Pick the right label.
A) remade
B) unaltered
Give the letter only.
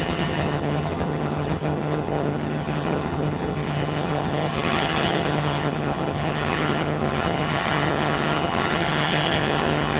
A